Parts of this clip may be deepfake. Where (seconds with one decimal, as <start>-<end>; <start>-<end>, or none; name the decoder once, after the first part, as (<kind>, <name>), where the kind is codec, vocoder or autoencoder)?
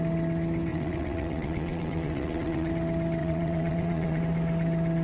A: 0.7-2.7 (vocoder, WaveNeXt); 3.2-4.2